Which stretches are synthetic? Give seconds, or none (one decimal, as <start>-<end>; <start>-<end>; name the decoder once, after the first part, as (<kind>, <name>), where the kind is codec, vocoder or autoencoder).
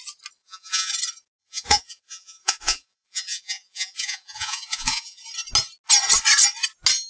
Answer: 0.4-0.9 (vocoder, Vocos); 1.4-5.2